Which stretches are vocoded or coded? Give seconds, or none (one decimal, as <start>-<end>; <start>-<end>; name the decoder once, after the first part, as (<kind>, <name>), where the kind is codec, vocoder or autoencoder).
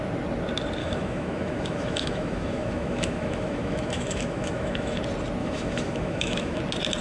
0.8-5.0 (autoencoder, DAC-VAE); 5.4-6.6